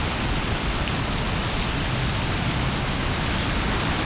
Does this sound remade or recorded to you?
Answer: recorded